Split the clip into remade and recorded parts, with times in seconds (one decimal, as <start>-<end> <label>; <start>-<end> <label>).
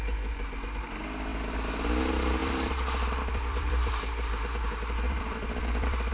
0.0-2.4 recorded; 2.4-6.1 remade